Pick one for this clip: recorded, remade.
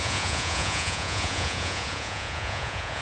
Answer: remade